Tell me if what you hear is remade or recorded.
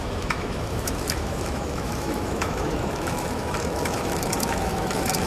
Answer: remade